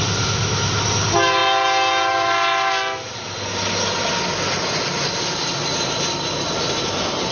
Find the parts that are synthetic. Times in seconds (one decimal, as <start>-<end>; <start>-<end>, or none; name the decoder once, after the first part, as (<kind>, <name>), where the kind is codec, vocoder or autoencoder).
none